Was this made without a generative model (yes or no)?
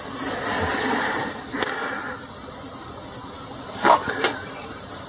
yes